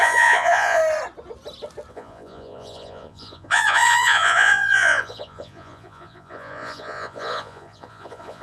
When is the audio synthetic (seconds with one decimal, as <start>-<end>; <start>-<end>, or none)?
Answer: 0.0-0.8; 1.9-8.4